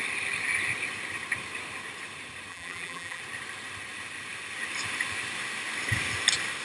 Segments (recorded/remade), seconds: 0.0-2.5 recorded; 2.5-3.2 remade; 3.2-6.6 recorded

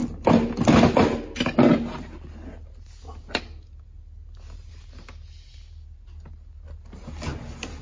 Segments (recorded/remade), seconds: 0.0-7.8 recorded